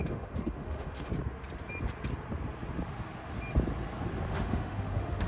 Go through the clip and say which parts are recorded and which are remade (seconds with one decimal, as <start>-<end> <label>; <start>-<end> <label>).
0.0-1.1 remade; 1.1-4.3 recorded; 4.3-5.3 remade